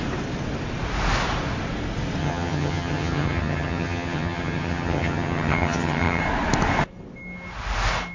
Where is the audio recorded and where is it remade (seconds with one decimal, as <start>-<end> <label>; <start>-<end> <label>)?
0.0-2.2 recorded; 2.2-6.2 remade; 6.2-8.1 recorded